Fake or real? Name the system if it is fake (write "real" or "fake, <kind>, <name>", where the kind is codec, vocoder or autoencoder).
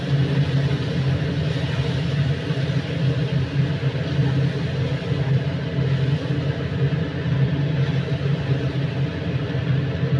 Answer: real